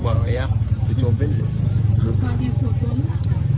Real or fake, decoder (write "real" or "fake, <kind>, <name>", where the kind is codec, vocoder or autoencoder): real